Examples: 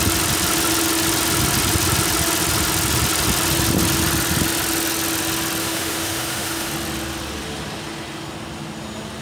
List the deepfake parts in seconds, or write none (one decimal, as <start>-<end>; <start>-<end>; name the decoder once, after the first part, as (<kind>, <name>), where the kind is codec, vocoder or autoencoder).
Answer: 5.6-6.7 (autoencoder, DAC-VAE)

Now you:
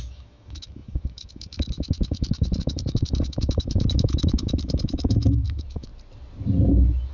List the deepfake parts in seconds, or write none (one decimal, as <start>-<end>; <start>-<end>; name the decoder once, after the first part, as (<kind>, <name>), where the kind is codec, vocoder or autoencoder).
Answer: 0.0-5.9 (autoencoder, DAC-VAE)

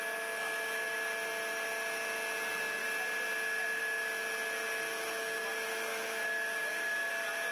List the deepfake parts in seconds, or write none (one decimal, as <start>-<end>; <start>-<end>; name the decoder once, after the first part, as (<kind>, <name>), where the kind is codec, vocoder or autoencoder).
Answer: 4.9-7.1 (autoencoder, DAC-VAE)